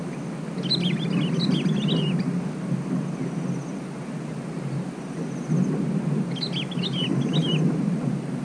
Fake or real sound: real